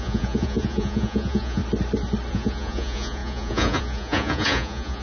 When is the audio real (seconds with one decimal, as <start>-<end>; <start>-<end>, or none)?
1.6-2.3